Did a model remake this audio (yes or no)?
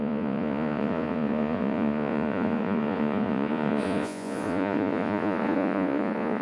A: yes